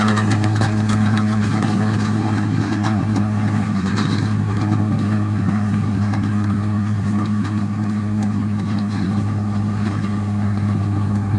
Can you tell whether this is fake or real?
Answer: fake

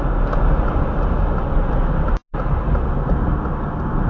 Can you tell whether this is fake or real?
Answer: real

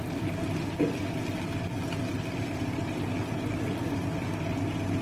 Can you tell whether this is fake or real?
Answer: real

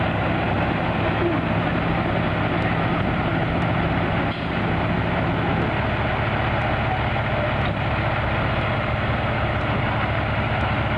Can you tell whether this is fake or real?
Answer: real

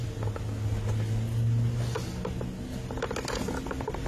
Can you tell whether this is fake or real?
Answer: real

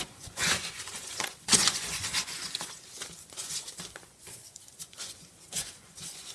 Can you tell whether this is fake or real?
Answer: fake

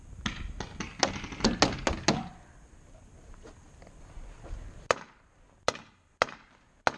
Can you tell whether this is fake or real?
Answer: real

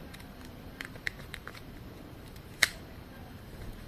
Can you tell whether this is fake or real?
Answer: fake